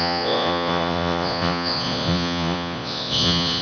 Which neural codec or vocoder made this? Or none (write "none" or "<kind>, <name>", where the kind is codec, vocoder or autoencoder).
vocoder, Vocos